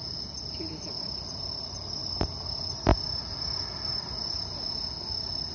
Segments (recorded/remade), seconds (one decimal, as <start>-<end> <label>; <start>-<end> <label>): 0.0-5.5 recorded